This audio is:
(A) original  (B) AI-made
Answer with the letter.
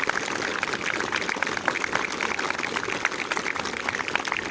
A